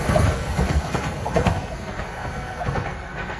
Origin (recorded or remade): remade